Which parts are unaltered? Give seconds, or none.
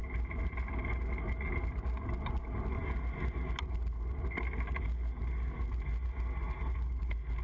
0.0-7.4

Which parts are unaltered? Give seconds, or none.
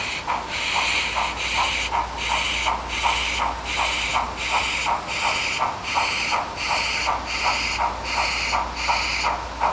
0.0-9.7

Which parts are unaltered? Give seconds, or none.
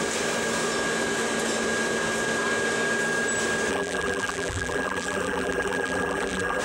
0.0-3.7